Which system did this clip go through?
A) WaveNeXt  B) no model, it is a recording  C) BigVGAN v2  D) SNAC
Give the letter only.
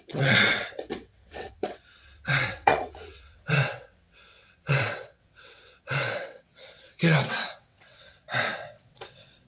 A